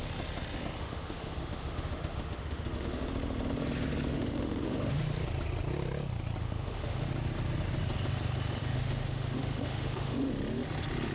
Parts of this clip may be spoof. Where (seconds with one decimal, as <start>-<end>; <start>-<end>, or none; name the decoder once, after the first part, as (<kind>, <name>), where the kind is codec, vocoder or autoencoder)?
0.8-3.1 (autoencoder, DAC-VAE); 4.1-5.0; 6.4-7.1; 8.6-10.3